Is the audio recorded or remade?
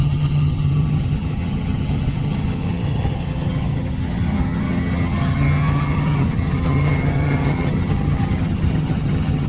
remade